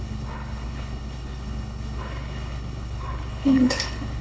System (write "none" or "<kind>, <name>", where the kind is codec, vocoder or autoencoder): codec, HILCodec